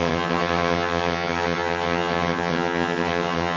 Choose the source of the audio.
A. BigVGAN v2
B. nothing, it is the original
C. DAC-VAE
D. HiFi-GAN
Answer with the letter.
D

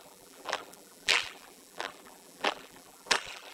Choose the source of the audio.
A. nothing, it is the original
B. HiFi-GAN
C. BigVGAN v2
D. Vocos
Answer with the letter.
C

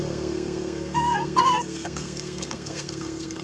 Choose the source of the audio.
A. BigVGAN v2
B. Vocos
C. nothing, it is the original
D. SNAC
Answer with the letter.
D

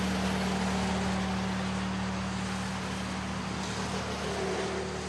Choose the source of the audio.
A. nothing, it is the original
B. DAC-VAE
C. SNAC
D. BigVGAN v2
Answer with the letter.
A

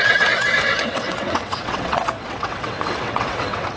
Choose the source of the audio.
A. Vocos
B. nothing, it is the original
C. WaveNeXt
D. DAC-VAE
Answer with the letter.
C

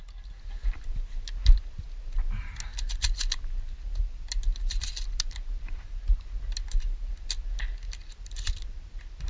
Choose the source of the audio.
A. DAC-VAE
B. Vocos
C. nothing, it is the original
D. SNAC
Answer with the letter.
C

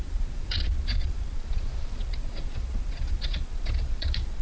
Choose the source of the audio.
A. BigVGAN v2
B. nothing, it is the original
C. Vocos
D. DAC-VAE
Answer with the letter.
C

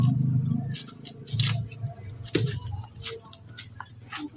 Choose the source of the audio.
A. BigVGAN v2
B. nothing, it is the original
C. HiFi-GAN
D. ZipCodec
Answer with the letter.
B